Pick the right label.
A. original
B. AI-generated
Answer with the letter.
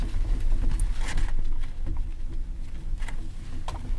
A